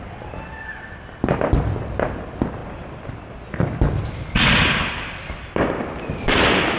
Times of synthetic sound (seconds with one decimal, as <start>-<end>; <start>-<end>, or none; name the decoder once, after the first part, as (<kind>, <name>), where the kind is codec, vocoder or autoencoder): none